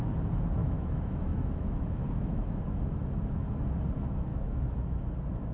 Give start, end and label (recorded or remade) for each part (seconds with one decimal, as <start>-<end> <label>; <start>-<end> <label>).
0.0-0.6 recorded; 0.6-2.6 remade; 2.6-4.3 recorded; 4.3-5.0 remade; 5.0-5.5 recorded